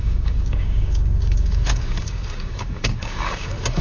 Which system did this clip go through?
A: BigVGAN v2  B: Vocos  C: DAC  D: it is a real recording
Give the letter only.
C